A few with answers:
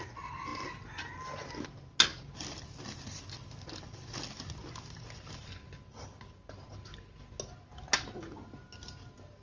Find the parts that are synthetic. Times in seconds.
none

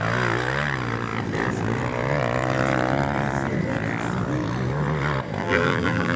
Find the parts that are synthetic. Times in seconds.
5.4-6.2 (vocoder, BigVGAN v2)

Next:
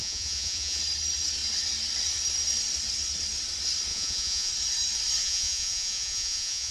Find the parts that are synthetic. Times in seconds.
0.0-0.8 (vocoder, Vocos); 3.9-4.5; 5.2-6.7

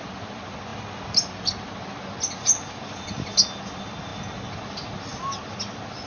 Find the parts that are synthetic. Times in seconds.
none

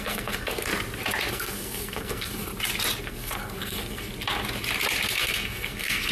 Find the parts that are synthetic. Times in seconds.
0.0-0.7 (codec, SNAC); 1.3-2.5; 3.0-4.1; 5.2-6.1

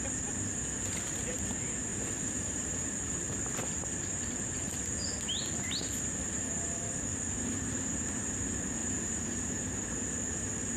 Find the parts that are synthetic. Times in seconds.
1.9-3.4 (vocoder, BigVGAN v2); 8.8-9.9

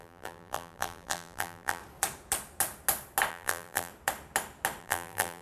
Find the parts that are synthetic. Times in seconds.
0.0-1.8 (vocoder, BigVGAN v2); 3.3-3.9; 4.8-5.4